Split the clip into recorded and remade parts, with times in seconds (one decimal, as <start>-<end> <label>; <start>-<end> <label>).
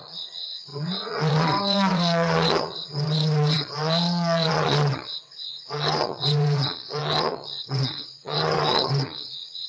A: 0.0-9.7 remade